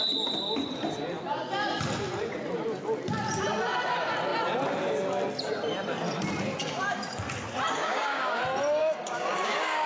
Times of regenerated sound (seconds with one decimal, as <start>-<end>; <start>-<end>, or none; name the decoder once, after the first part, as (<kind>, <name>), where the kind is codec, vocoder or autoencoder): 7.8-8.4 (codec, DAC); 8.8-9.9